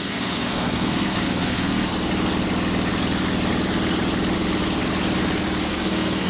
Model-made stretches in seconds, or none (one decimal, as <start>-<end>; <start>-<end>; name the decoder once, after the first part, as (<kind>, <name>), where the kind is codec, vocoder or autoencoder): 0.0-1.9 (codec, SNAC); 5.7-6.3